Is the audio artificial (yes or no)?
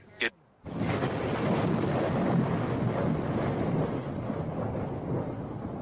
no